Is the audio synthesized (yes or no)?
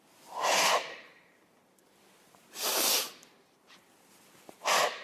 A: yes